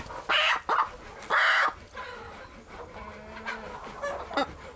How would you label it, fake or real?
real